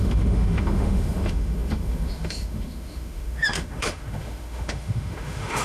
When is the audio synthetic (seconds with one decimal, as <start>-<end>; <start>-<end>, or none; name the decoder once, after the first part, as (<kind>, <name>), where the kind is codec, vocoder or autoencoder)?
0.0-5.6 (autoencoder, DAC-VAE)